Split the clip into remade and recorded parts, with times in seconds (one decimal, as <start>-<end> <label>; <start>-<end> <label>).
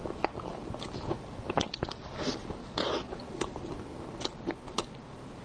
0.0-2.6 recorded; 2.6-3.2 remade; 3.2-5.4 recorded